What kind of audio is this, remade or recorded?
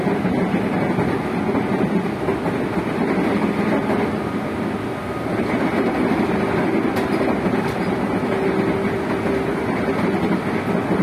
recorded